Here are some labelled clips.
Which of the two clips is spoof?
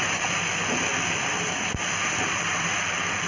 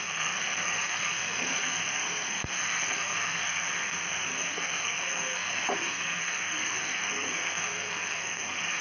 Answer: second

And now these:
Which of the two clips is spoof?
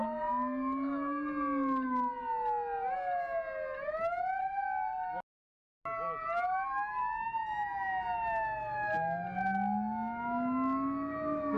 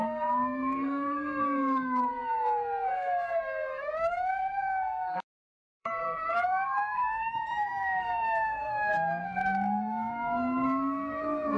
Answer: second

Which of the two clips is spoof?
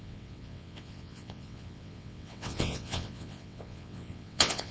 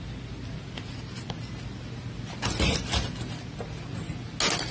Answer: first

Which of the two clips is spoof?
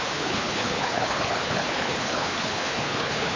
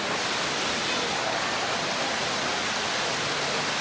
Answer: first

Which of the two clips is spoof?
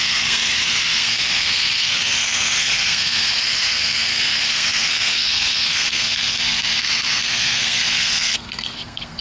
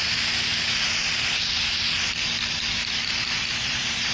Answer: first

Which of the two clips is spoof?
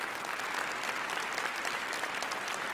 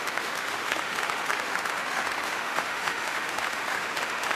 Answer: second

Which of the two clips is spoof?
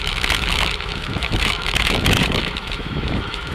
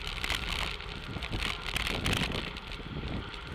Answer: first